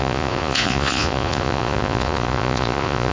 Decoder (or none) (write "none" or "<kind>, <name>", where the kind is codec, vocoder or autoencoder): vocoder, Vocos